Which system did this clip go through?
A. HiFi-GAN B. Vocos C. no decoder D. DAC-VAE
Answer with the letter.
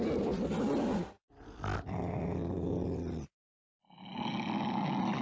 C